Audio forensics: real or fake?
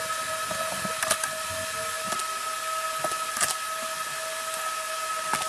real